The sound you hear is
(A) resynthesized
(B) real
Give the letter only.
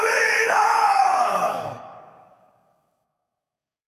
A